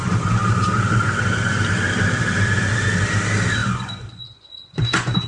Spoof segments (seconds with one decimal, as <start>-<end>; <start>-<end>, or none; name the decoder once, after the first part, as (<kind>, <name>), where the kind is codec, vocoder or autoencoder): 3.6-5.3 (vocoder, Vocos)